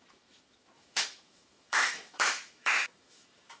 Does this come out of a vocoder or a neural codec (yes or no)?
yes